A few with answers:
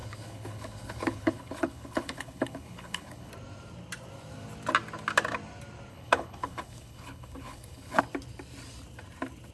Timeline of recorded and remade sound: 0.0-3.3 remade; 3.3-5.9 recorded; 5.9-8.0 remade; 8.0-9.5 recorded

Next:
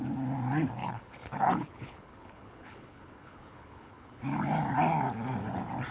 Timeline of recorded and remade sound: 0.0-0.8 recorded; 0.8-4.2 remade; 4.2-5.9 recorded

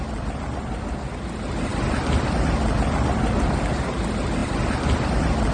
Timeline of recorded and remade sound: 0.0-5.5 recorded

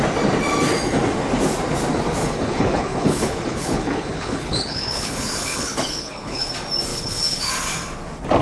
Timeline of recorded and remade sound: 0.0-2.2 recorded; 2.2-6.5 remade; 6.5-6.9 recorded; 6.9-7.5 remade; 7.5-8.4 recorded